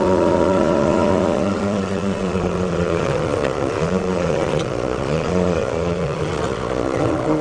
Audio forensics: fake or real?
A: fake